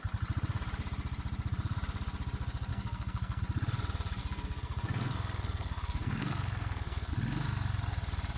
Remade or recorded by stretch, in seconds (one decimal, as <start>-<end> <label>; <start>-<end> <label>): 0.0-2.7 recorded; 2.7-3.4 remade; 3.4-4.2 recorded; 4.2-7.1 remade; 7.1-8.4 recorded

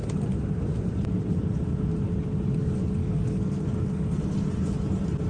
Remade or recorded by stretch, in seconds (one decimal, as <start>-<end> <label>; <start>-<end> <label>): 0.0-3.0 recorded; 3.0-4.2 remade; 4.2-5.3 recorded

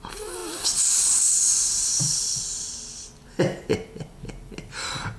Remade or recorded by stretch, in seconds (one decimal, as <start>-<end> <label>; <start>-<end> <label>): 0.0-5.2 recorded